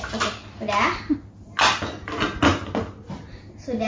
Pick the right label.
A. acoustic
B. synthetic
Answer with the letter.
A